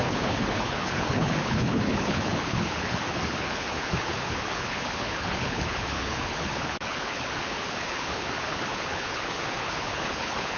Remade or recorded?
remade